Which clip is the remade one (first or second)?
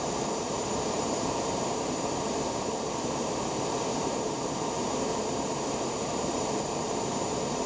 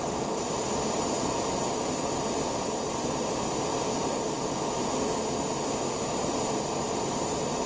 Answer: first